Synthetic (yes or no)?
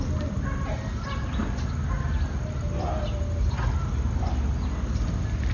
no